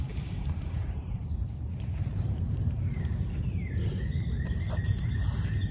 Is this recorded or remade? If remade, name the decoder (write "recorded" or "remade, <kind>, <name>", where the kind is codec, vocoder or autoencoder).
remade, vocoder, BigVGAN v2